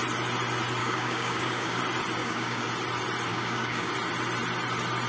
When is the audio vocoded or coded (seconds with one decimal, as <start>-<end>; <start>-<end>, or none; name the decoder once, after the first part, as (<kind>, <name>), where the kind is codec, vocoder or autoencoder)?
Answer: 0.8-1.8 (codec, DAC); 2.2-2.7; 3.3-3.9